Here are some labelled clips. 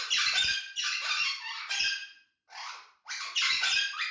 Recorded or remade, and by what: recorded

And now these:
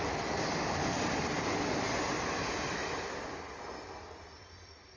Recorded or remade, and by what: recorded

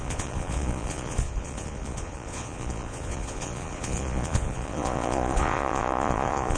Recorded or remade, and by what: remade, vocoder, Vocos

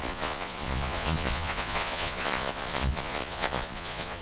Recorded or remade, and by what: remade, vocoder, Vocos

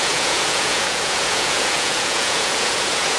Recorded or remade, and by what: remade, vocoder, Vocos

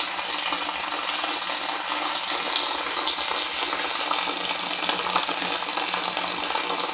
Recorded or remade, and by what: recorded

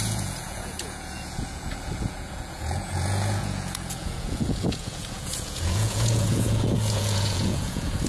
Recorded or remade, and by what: remade, vocoder, Vocos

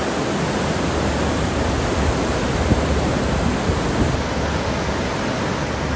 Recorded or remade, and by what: recorded